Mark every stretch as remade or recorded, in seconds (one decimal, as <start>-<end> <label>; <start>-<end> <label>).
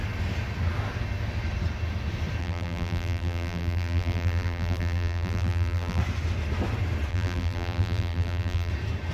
0.0-2.4 recorded; 2.4-6.0 remade; 6.0-7.1 recorded; 7.1-8.7 remade; 8.7-9.1 recorded